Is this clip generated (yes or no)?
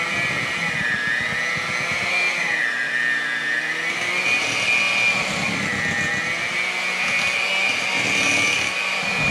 no